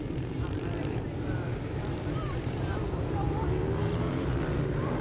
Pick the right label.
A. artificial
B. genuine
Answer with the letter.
A